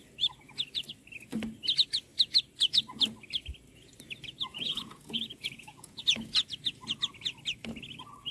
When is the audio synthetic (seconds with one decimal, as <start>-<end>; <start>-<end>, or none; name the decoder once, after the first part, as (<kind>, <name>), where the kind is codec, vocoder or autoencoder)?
4.5-6.0 (vocoder, Vocos)